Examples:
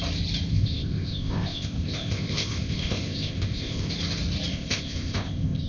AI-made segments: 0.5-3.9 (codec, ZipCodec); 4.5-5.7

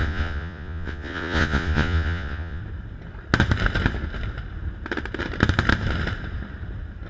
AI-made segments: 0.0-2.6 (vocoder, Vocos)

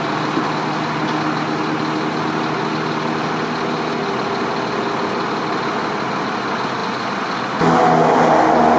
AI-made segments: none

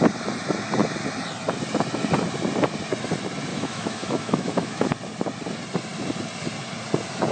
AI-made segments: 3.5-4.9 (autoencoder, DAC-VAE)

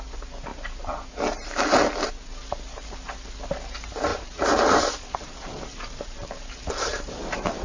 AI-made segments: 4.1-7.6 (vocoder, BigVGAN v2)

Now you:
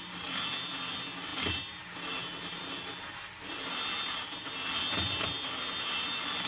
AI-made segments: none